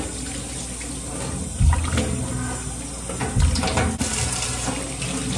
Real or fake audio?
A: real